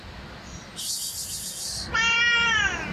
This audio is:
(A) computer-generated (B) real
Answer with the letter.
B